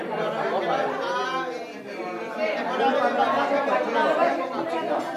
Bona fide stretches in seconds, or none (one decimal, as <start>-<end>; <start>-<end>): 0.0-5.2